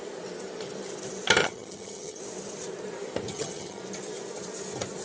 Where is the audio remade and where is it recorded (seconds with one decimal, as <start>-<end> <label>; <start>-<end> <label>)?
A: 0.0-1.4 recorded; 1.4-2.2 remade; 2.2-3.3 recorded; 3.3-3.8 remade; 3.8-5.0 recorded